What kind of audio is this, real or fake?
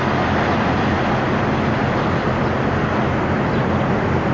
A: real